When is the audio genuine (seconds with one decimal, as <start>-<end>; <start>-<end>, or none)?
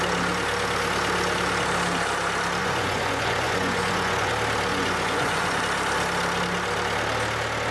0.0-2.6; 4.3-4.7; 5.6-7.7